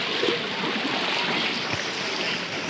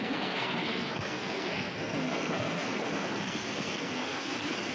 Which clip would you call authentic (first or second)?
first